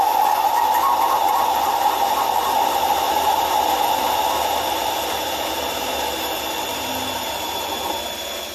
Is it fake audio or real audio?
fake